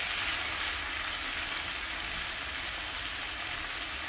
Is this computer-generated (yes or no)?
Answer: no